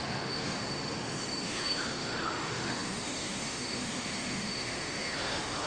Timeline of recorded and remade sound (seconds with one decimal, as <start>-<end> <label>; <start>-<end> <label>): 0.0-5.7 remade